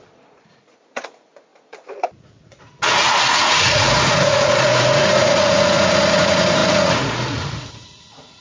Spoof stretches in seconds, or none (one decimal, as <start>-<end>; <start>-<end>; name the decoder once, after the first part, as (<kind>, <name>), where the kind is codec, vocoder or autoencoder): 0.0-8.4 (vocoder, Vocos)